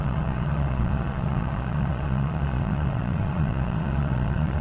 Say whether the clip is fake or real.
fake